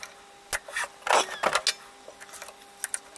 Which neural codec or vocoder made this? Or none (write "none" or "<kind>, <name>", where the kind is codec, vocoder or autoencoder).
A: none